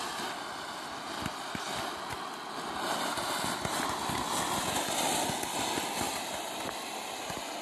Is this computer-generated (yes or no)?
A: no